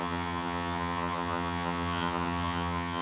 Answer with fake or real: fake